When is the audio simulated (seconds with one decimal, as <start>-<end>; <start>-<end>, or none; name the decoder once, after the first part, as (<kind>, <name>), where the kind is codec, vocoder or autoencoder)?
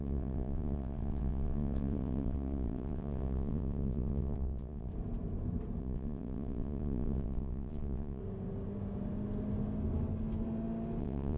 0.0-4.9 (vocoder, WaveNeXt); 5.8-8.2; 11.0-11.4